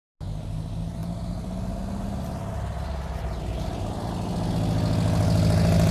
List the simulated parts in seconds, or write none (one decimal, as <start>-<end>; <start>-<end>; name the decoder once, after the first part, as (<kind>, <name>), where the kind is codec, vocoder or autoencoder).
none

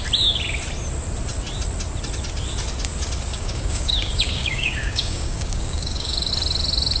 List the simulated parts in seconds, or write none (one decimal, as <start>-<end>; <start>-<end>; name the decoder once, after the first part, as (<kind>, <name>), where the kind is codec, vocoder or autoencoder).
3.3-6.3 (codec, DAC)

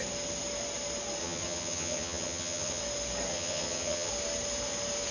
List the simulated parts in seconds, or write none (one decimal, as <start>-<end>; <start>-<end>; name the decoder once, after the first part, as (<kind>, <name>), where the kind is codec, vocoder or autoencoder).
1.2-2.8 (vocoder, HiFi-GAN); 3.3-4.1